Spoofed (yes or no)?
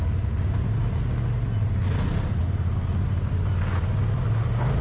no